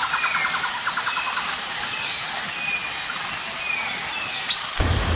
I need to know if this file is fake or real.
real